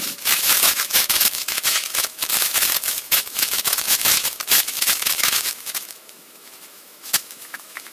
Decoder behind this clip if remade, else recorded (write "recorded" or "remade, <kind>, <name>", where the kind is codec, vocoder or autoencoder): remade, autoencoder, DAC-VAE